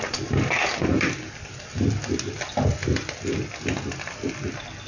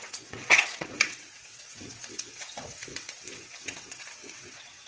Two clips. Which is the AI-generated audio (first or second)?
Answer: second